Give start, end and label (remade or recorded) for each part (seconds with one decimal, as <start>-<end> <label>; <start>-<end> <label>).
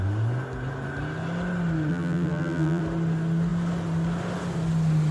0.0-1.9 recorded; 1.9-2.8 remade; 2.8-5.1 recorded